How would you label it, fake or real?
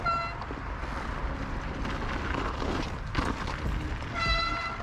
real